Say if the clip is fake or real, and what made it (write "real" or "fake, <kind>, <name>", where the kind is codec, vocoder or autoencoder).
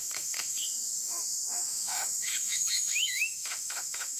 fake, autoencoder, DAC-VAE